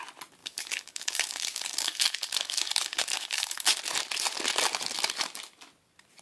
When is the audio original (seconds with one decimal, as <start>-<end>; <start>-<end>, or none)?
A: 0.0-0.4; 3.8-6.2